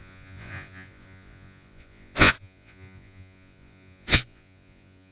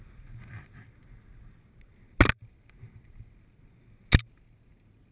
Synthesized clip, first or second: first